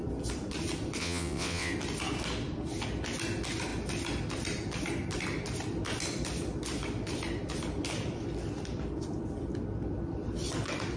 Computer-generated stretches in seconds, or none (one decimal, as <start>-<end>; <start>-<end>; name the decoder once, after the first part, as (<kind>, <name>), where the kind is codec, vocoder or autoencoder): 1.0-1.7 (vocoder, WaveNeXt)

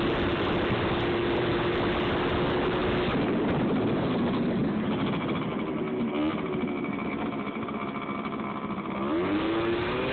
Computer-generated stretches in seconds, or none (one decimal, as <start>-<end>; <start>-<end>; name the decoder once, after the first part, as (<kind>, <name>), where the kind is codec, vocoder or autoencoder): none

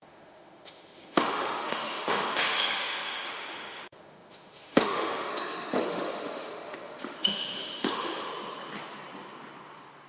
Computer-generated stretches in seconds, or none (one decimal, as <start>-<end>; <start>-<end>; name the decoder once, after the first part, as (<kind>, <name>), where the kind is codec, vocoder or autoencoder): 0.0-8.3 (autoencoder, DAC-VAE)

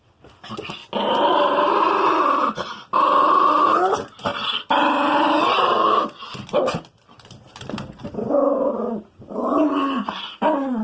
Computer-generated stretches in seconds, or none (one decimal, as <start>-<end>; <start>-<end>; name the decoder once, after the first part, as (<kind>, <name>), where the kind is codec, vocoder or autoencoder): none

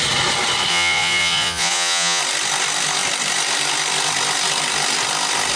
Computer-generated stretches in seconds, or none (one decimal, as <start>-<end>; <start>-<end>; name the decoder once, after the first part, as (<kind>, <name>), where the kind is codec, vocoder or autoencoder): 0.7-2.2 (vocoder, Vocos)

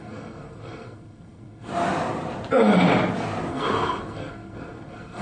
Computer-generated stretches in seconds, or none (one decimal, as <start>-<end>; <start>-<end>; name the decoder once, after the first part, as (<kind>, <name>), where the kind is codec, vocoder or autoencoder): 0.0-1.7 (codec, SNAC); 3.5-5.2

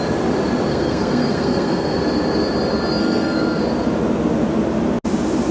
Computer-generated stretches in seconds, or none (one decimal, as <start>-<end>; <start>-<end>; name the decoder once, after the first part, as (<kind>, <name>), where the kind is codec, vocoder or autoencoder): 0.7-2.0 (codec, SNAC); 3.0-3.6

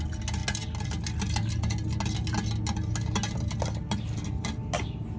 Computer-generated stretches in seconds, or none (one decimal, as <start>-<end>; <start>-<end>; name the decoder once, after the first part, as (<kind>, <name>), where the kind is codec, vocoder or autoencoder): none